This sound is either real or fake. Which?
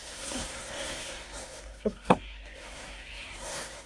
fake